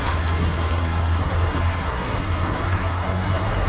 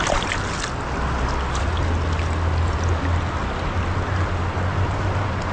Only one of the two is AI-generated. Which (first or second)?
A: first